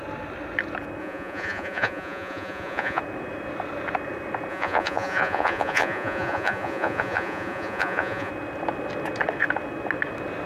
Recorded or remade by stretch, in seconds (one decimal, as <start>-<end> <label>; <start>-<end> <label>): 0.0-1.0 recorded; 1.0-3.0 remade; 3.0-4.5 recorded; 4.5-8.3 remade; 8.3-10.5 recorded